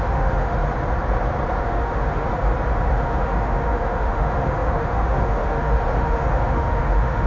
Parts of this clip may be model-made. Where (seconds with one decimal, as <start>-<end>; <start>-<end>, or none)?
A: 0.0-0.6; 1.6-2.3; 2.9-7.3